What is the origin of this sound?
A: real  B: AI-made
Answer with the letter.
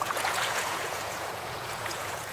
B